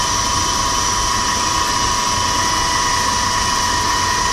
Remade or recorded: recorded